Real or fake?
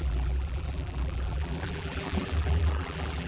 fake